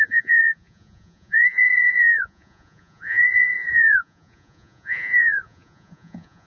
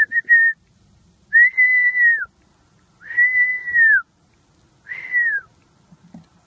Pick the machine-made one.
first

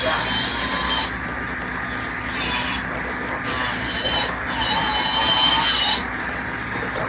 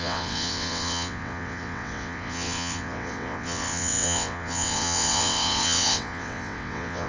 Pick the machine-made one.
second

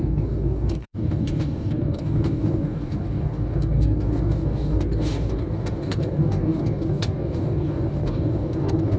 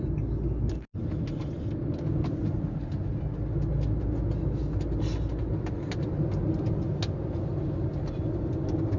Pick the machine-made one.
first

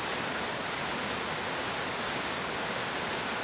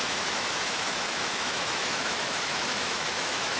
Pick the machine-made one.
second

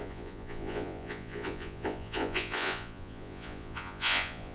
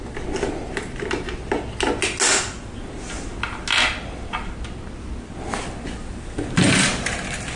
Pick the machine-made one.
first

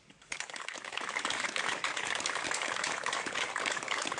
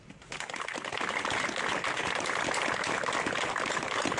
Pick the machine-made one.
first